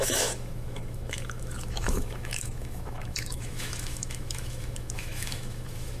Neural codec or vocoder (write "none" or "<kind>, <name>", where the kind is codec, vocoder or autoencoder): autoencoder, DAC-VAE